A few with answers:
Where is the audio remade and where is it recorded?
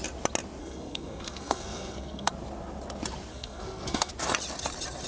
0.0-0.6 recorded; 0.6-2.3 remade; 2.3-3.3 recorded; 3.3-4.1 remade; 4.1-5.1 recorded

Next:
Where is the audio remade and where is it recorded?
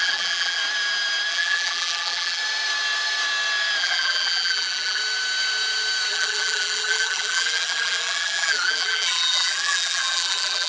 0.0-0.6 remade; 0.6-1.3 recorded; 1.3-2.4 remade; 2.4-3.8 recorded; 3.8-5.0 remade; 5.0-6.1 recorded; 6.1-10.7 remade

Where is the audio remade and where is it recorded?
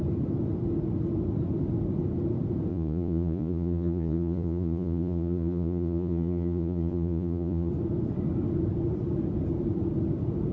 0.0-2.7 recorded; 2.7-7.7 remade; 7.7-10.5 recorded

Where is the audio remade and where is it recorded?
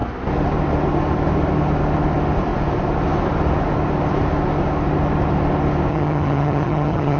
0.0-5.9 recorded; 5.9-7.2 remade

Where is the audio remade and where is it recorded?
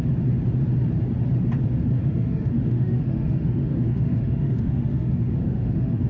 0.0-2.0 recorded; 2.0-6.1 remade